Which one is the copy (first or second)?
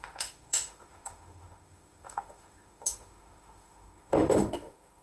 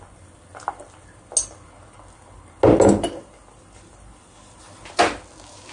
first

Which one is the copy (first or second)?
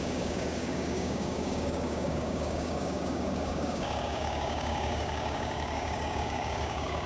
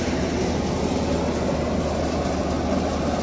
first